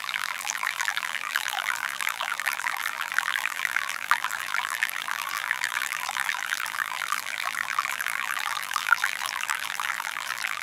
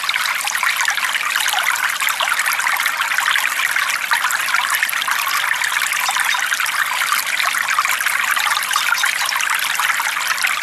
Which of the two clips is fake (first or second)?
first